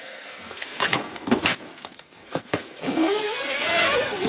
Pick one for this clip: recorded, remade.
remade